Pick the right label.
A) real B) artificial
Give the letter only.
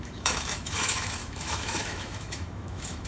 B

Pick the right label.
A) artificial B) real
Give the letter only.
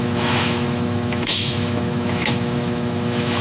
A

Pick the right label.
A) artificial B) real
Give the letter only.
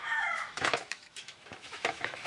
A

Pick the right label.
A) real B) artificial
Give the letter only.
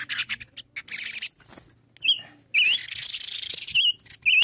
A